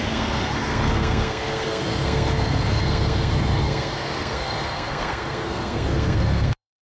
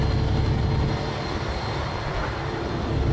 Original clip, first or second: second